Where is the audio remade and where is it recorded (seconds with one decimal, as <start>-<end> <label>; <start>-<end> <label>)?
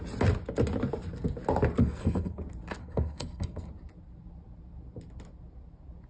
0.0-1.8 recorded; 1.8-2.4 remade; 2.4-2.8 recorded; 2.8-3.7 remade; 3.7-6.1 recorded